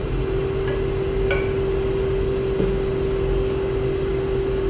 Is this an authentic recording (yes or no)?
yes